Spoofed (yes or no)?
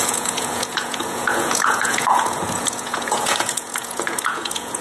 yes